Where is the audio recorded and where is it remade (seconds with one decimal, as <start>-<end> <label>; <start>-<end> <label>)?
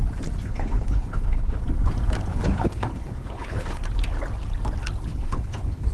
0.0-0.4 recorded; 0.4-1.6 remade; 1.6-2.3 recorded; 2.3-3.8 remade; 3.8-5.1 recorded; 5.1-5.9 remade